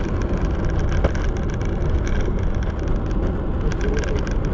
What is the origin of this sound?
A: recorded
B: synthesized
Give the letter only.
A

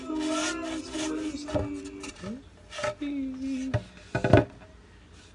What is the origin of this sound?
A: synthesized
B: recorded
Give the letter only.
B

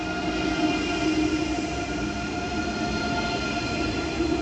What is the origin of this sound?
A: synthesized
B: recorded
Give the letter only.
B